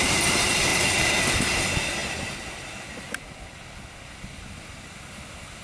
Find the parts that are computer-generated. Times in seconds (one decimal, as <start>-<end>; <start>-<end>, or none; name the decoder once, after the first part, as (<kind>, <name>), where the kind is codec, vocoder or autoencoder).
none